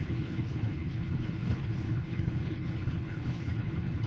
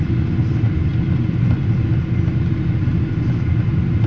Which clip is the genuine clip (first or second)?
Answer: second